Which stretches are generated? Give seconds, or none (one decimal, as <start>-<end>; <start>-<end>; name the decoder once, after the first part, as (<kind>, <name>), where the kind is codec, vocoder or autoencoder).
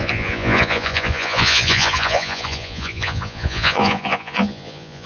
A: 0.0-5.1 (vocoder, Vocos)